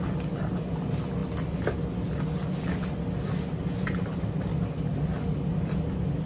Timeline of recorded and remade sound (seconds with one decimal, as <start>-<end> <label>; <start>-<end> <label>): 0.0-6.3 recorded